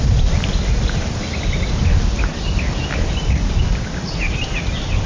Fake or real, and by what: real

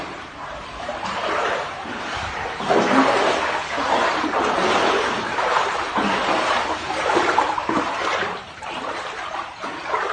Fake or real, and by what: fake, vocoder, BigVGAN v2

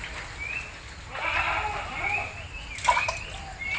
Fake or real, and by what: real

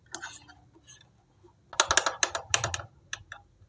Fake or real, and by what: real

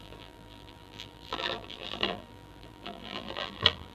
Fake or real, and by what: fake, vocoder, BigVGAN v2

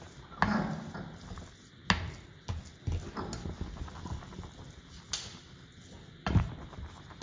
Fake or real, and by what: real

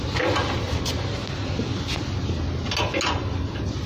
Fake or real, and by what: real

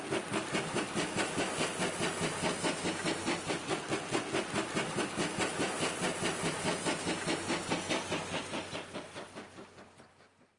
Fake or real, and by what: real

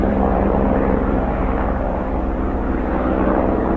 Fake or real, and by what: fake, vocoder, BigVGAN v2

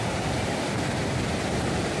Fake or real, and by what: real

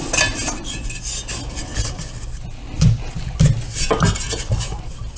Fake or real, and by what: real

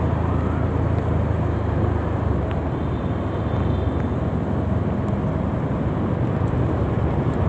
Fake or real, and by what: real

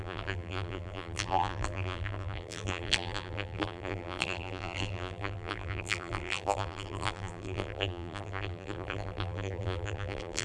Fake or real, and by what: fake, vocoder, BigVGAN v2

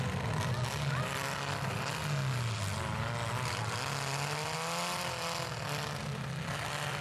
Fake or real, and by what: real